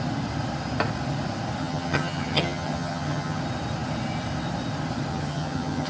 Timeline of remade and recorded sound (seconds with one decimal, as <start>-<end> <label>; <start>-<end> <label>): 0.0-1.6 recorded; 1.6-3.4 remade; 3.4-5.1 recorded; 5.1-5.9 remade